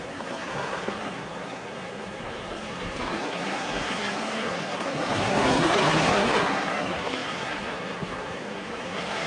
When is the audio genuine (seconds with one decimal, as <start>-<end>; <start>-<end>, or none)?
none

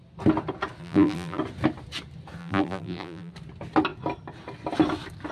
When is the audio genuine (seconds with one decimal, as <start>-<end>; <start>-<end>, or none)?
0.0-0.8; 1.4-2.4; 3.3-5.3

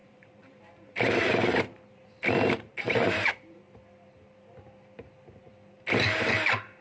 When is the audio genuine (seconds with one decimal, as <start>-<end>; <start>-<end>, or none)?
3.3-6.8

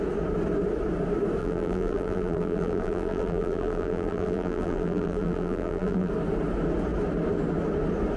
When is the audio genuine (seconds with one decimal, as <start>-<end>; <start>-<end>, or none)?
0.0-1.4; 6.1-8.2

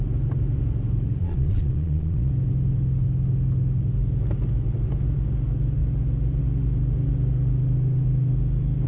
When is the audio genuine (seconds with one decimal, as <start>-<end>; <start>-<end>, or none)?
0.0-1.2; 2.3-8.9

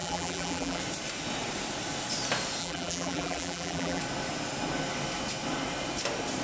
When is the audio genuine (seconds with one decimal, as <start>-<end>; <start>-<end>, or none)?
0.8-2.6; 4.0-6.4

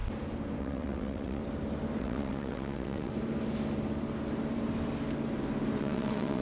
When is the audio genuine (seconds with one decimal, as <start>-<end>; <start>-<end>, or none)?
0.0-0.6; 1.4-2.0; 3.1-5.8

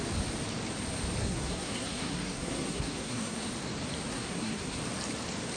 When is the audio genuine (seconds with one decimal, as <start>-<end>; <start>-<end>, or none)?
0.0-1.2; 3.5-4.1; 4.8-5.6